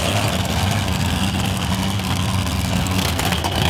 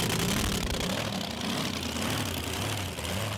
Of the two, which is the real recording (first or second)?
second